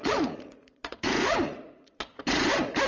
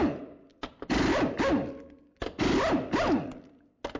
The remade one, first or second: first